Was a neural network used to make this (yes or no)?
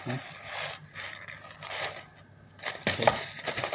no